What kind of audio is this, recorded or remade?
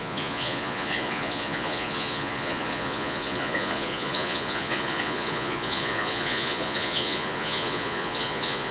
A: remade